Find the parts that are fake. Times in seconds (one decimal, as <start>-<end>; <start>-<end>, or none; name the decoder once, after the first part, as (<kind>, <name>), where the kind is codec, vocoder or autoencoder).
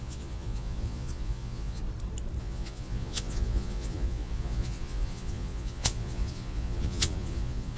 0.0-1.8 (vocoder, Vocos); 2.4-7.8